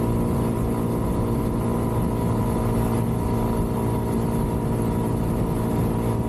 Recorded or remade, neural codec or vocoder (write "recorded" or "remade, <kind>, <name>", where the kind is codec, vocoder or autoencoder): recorded